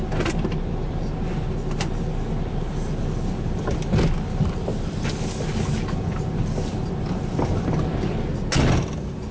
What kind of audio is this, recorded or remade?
recorded